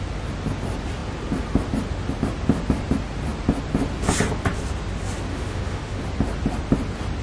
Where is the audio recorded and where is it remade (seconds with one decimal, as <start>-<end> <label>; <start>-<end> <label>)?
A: 0.0-5.3 recorded; 5.3-6.0 remade; 6.0-7.2 recorded